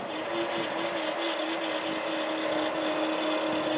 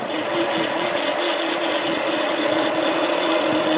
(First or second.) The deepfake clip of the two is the second